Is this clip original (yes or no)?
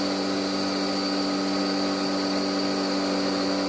yes